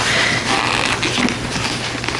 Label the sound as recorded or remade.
recorded